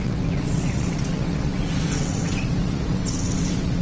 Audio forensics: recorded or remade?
remade